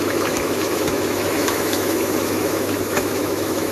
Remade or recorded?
remade